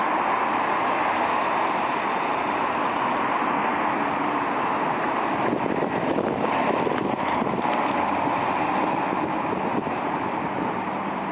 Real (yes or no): yes